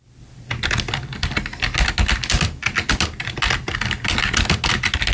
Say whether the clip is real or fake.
real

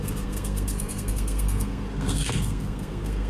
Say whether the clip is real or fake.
fake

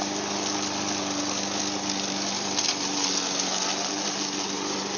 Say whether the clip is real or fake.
real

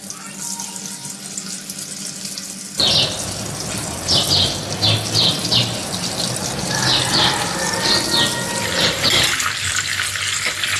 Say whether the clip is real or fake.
real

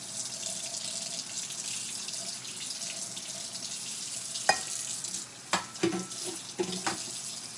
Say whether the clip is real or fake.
real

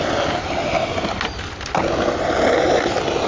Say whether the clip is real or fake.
real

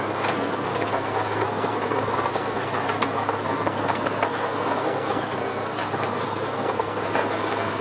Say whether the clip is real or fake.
fake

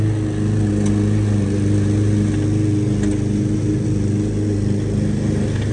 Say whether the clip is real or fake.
real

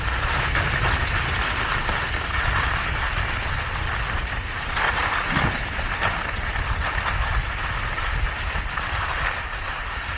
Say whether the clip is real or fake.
real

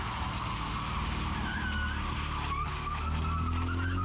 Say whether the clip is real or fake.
real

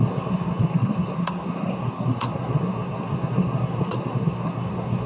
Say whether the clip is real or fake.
fake